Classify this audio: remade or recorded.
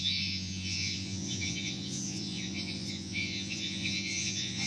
remade